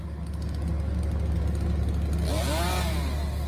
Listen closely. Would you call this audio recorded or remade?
recorded